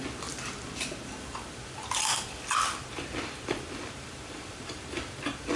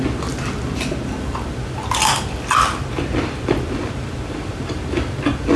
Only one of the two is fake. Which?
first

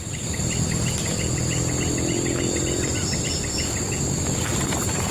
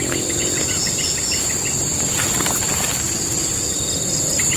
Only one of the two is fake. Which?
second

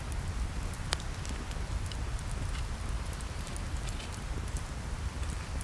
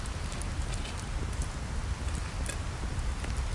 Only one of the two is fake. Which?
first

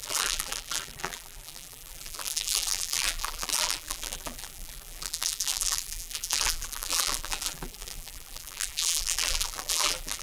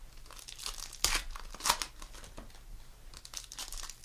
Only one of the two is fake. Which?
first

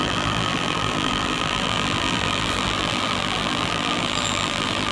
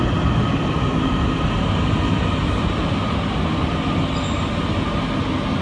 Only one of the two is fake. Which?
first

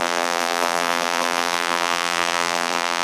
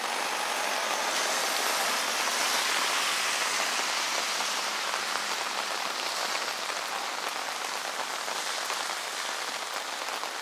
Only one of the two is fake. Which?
first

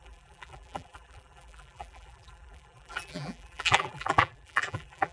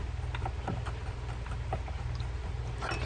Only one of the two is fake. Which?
first